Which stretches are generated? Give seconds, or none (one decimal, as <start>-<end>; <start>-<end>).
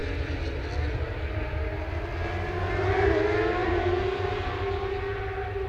3.6-5.7